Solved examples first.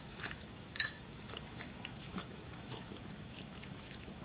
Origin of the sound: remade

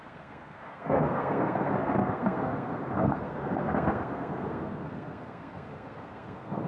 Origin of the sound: remade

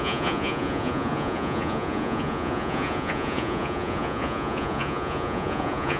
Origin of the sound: remade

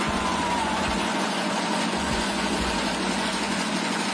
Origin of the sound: remade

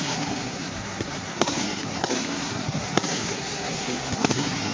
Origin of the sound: remade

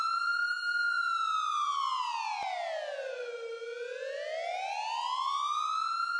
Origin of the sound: recorded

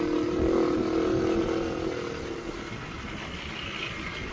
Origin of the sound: recorded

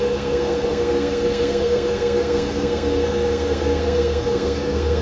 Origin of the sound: remade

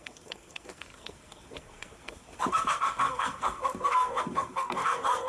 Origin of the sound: remade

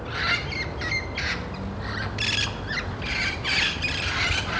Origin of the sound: recorded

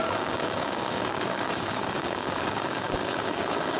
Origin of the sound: remade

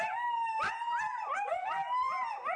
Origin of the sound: recorded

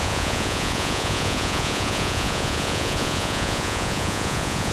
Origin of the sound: remade